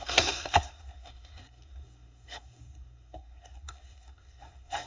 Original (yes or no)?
no